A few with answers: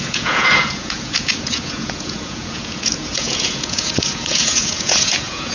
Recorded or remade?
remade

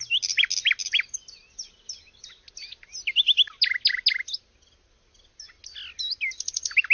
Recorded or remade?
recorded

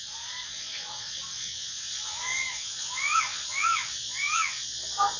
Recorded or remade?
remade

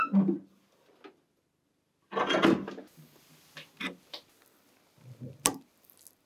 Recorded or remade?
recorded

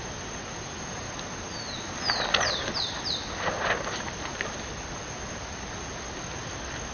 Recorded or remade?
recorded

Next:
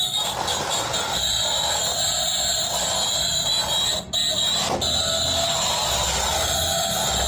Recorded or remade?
recorded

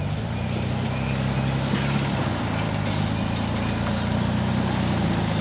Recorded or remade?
recorded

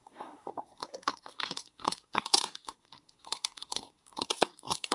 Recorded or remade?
remade